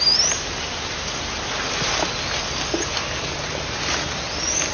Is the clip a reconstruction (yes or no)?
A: no